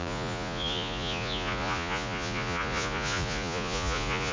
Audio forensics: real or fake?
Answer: fake